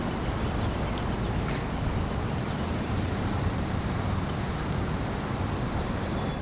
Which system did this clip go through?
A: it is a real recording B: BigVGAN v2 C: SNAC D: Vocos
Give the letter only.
B